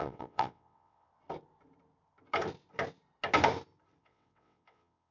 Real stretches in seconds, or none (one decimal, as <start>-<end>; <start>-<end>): 1.1-4.0